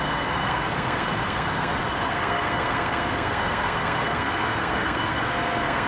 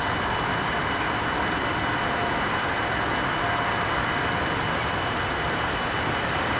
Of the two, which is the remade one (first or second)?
first